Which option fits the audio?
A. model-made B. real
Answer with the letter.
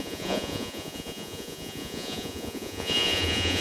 A